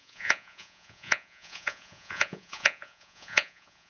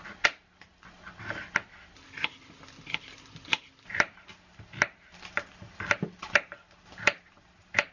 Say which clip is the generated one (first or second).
first